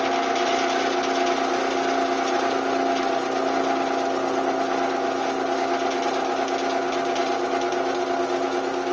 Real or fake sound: real